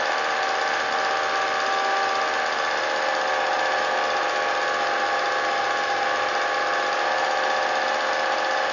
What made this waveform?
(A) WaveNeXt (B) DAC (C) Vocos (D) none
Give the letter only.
D